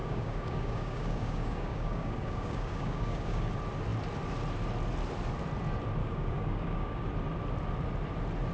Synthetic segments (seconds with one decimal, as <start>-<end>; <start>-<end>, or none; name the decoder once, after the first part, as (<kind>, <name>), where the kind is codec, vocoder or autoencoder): 0.0-3.5 (codec, DAC); 6.0-7.1